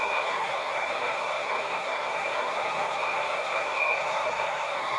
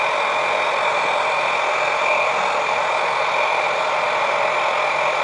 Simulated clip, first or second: first